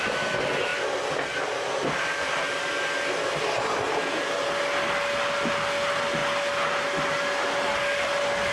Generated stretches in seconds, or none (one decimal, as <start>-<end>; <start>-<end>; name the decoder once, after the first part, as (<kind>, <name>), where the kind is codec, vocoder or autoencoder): none